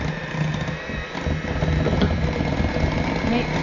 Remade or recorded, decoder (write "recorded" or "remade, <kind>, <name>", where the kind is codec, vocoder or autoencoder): recorded